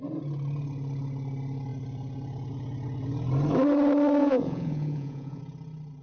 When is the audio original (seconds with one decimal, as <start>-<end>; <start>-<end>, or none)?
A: 0.0-4.2; 5.4-6.0